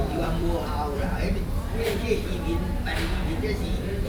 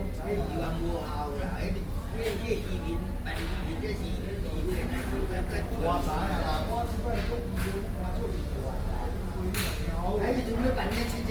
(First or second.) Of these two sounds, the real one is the second